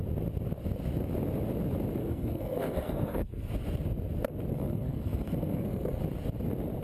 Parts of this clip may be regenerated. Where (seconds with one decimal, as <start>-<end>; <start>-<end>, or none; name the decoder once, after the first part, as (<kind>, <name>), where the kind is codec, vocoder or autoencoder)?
2.0-3.5 (codec, SNAC); 4.5-6.0

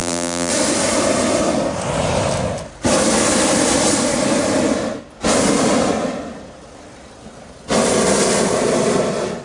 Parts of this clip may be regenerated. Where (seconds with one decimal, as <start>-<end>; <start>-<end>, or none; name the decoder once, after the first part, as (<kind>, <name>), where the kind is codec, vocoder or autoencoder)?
0.0-0.5 (vocoder, BigVGAN v2)